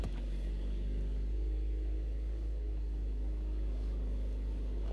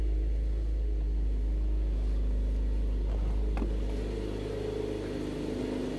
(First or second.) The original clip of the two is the second